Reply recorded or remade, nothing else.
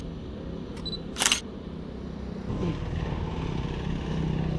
recorded